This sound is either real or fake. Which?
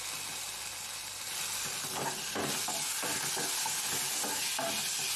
real